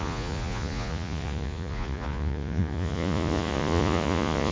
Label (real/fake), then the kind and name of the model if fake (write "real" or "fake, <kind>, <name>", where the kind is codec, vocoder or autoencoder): fake, vocoder, Vocos